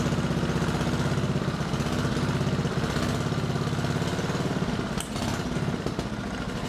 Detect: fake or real real